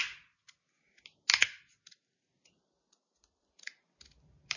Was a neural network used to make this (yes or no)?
no